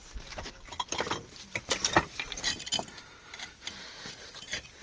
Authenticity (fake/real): real